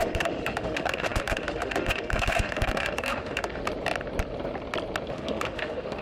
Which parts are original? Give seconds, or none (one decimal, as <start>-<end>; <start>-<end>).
3.6-5.1